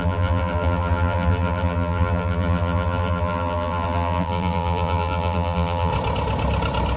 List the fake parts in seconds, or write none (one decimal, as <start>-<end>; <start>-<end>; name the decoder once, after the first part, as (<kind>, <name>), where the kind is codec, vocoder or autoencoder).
0.0-5.9 (vocoder, BigVGAN v2)